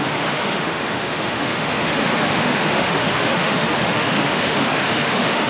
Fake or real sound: fake